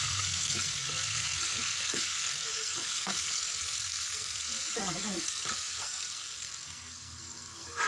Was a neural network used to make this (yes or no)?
yes